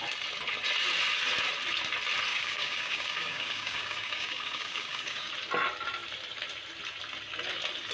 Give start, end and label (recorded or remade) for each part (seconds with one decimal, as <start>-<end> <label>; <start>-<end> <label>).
0.0-2.3 recorded; 2.3-5.3 remade; 5.3-7.9 recorded

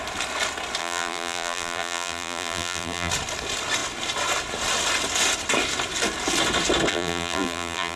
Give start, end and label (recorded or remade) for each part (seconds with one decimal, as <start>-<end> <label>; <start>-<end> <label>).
0.0-0.8 recorded; 0.8-3.1 remade; 3.1-6.9 recorded; 6.9-8.0 remade

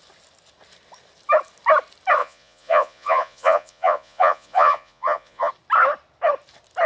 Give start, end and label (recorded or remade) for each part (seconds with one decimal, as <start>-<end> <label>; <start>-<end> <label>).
0.0-2.2 recorded; 2.2-5.5 remade; 5.5-6.9 recorded

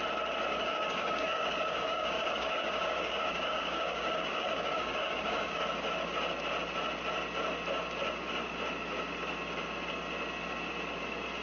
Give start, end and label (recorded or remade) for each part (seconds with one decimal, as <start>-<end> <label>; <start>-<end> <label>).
0.0-0.5 recorded; 0.5-5.6 remade; 5.6-11.4 recorded

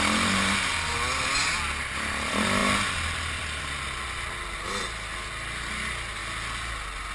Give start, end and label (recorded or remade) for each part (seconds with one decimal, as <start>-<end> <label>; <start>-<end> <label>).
0.0-7.1 recorded

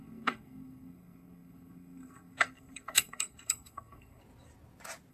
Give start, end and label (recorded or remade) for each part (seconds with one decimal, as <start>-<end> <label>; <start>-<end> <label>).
0.0-4.2 remade; 4.2-5.1 recorded